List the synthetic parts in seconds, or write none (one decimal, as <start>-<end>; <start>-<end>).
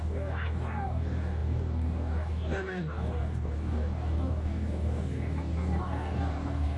0.0-6.8